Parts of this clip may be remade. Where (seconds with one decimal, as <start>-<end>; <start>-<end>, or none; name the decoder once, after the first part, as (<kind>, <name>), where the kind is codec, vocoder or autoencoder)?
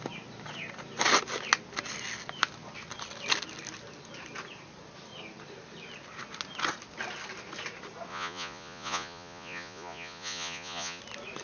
8.1-11.0 (vocoder, Vocos)